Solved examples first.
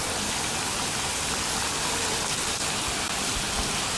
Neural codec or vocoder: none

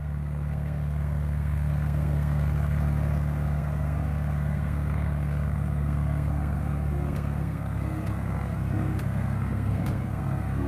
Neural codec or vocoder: codec, SNAC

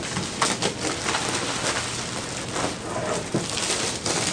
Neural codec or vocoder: none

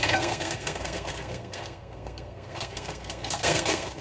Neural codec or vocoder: codec, SNAC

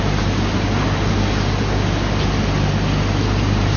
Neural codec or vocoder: none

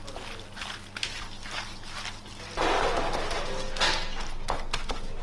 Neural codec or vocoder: none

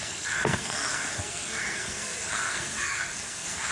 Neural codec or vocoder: codec, SNAC